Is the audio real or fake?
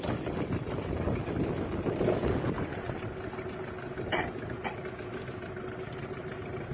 real